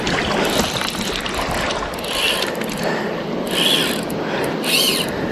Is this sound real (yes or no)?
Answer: yes